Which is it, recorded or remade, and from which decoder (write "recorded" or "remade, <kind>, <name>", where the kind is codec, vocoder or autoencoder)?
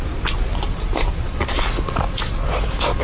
recorded